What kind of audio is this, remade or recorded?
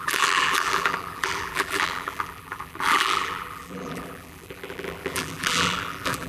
remade